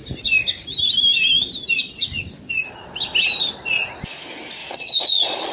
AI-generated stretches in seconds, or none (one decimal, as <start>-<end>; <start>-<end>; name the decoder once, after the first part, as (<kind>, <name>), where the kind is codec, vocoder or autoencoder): 4.6-5.5 (vocoder, Vocos)